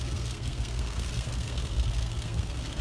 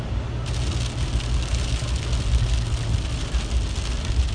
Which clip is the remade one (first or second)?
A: first